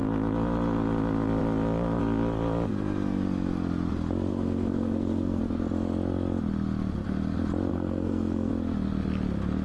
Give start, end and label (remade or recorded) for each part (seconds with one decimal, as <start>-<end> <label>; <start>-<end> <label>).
0.0-4.3 recorded; 4.3-5.4 remade; 5.4-7.7 recorded; 7.7-8.5 remade; 8.5-9.6 recorded